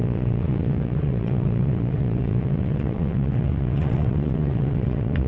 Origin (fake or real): fake